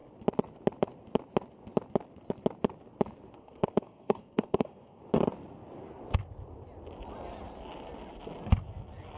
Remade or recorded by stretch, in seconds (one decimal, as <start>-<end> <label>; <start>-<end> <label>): 0.0-3.4 recorded; 3.4-5.0 remade; 5.0-9.2 recorded